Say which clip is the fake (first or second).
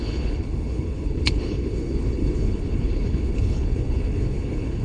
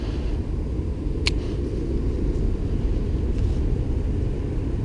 first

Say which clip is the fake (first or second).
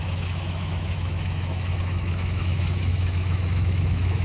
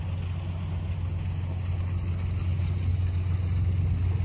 first